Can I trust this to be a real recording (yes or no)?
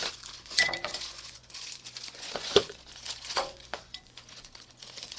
no